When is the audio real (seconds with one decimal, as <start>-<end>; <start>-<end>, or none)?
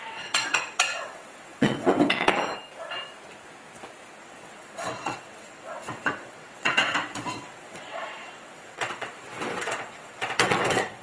2.4-4.2